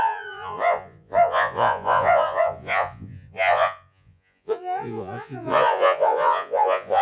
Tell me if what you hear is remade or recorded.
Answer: remade